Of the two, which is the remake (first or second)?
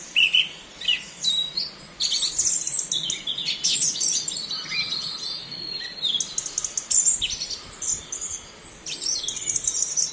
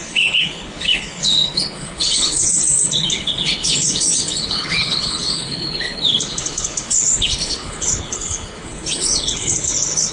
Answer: second